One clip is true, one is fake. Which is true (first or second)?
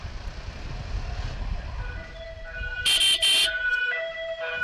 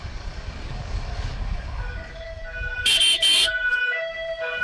first